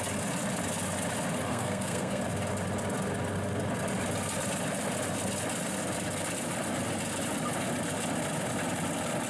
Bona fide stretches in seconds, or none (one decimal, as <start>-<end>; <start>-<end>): 0.0-1.5; 2.2-9.3